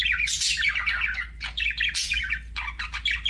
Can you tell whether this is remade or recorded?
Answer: recorded